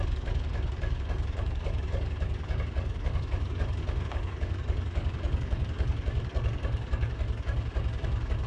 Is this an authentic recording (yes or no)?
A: no